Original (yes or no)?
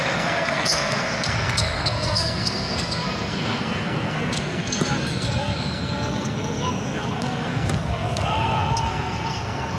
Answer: no